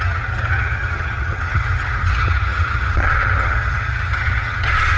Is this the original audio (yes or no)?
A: no